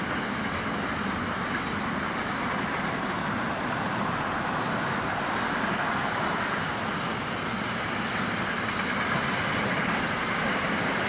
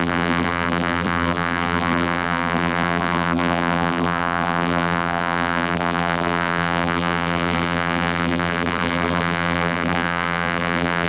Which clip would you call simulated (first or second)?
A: second